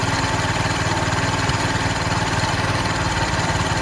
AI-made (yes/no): no